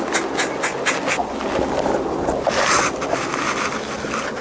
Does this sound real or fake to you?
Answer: real